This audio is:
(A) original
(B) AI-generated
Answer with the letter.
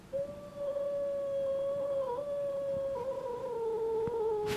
A